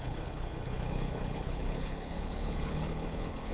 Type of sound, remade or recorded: remade